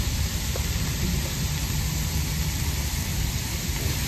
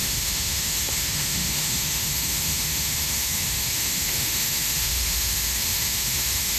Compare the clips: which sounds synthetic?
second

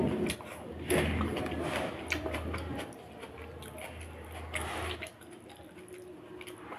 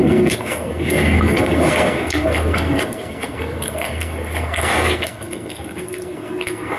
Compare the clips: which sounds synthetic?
second